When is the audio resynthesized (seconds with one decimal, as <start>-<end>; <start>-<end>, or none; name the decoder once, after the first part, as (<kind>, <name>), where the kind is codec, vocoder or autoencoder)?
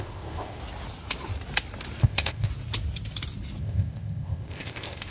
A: 0.0-0.6 (codec, ZipCodec); 2.0-2.5; 3.6-5.1